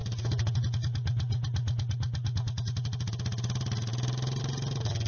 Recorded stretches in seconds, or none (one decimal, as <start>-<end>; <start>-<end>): 0.0-5.1

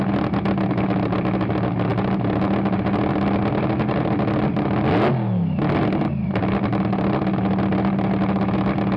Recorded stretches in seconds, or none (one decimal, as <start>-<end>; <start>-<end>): 0.0-9.0

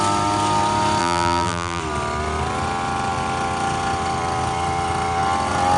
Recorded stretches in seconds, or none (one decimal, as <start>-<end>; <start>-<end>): 0.0-1.0; 1.8-5.8

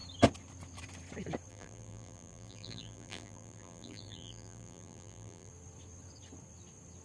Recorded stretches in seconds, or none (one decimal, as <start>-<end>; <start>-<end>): 0.0-1.5; 5.5-7.0

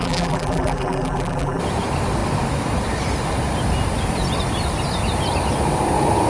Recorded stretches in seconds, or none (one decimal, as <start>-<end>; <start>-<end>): 1.6-6.3